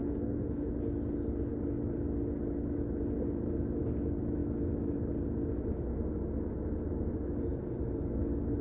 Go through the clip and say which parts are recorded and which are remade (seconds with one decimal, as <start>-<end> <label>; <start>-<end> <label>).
0.0-0.7 remade; 0.7-8.6 recorded